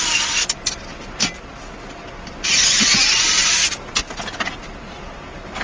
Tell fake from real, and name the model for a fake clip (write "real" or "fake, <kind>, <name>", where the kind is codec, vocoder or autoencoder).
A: real